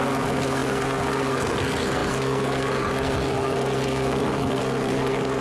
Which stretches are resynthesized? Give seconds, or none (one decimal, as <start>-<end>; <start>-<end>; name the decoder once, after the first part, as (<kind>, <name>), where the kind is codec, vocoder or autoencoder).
0.0-5.4 (codec, SNAC)